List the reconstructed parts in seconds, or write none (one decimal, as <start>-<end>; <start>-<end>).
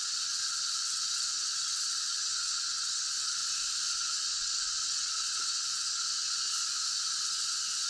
0.0-3.4; 3.9-6.6; 7.2-7.9